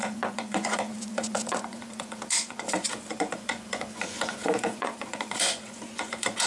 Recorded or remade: remade